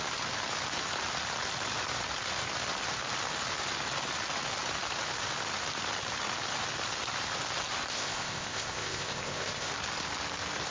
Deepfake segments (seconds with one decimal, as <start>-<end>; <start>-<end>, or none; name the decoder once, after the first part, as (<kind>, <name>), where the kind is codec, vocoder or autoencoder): 7.9-9.7 (codec, ZipCodec)